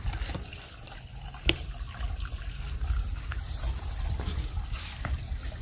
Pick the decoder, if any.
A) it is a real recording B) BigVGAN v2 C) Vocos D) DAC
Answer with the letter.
A